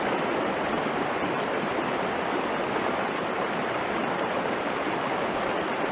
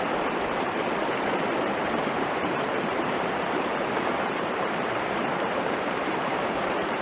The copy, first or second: second